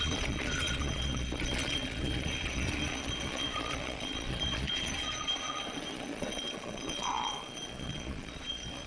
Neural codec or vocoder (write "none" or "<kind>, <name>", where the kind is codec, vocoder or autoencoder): vocoder, Vocos